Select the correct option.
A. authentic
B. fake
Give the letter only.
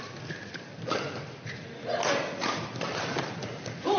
A